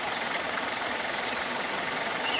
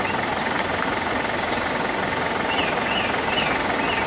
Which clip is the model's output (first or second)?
first